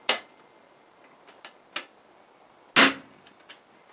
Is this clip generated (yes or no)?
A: no